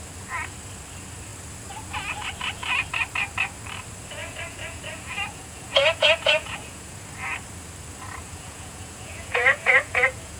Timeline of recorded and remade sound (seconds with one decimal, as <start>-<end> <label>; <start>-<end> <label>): 0.0-4.2 recorded; 4.2-7.0 remade; 7.0-8.2 recorded; 8.2-10.4 remade